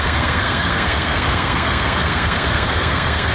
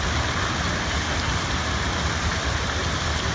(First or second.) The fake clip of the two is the first